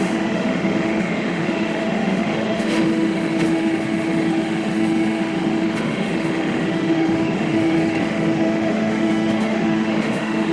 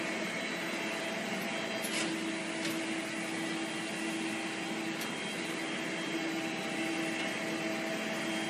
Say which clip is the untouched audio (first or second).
second